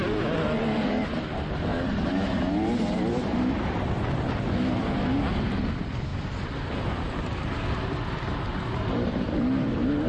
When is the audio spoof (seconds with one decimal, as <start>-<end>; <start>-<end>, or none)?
none